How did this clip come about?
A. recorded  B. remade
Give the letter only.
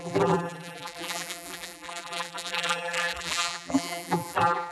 B